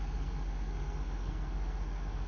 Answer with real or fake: fake